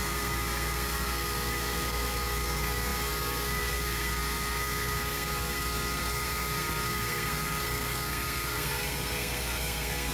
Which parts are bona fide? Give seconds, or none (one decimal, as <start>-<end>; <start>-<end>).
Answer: none